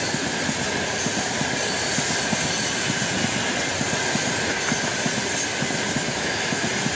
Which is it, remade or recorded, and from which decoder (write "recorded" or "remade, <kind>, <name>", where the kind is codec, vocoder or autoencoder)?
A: recorded